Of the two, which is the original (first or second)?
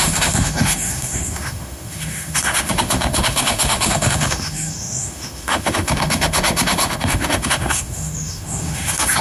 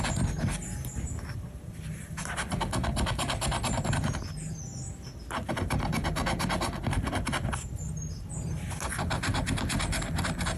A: second